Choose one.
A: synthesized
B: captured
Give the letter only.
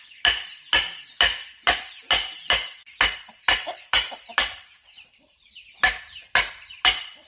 B